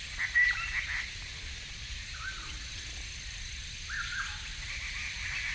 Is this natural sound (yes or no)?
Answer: yes